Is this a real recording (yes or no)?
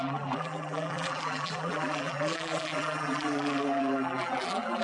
no